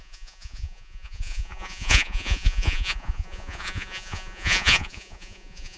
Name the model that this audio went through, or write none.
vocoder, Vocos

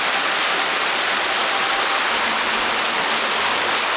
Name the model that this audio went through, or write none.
none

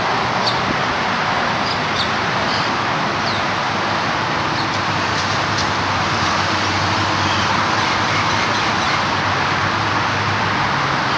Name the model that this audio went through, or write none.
none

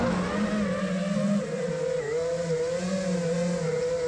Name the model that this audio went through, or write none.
none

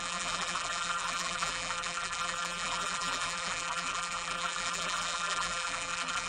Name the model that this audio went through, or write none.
vocoder, BigVGAN v2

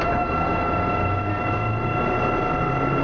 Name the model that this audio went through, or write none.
none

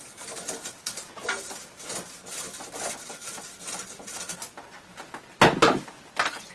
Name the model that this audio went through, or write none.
none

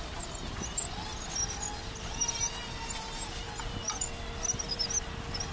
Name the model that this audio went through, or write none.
none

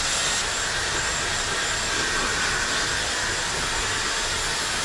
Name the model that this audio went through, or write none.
none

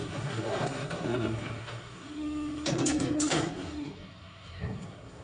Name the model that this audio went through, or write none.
codec, SNAC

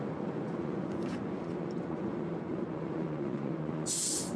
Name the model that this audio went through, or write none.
vocoder, Vocos